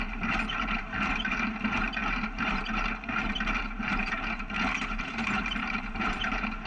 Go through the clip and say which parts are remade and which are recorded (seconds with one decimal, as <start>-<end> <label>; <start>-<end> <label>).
0.0-6.7 remade